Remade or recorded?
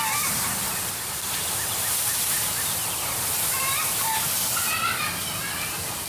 recorded